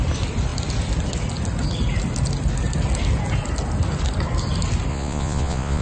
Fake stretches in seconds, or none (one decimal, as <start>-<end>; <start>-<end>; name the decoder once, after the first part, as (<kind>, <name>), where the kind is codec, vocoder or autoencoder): 4.9-5.8 (vocoder, Vocos)